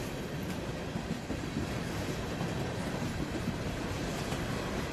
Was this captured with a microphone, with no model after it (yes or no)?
no